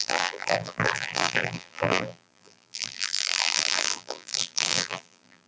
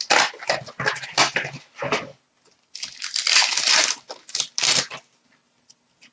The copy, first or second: first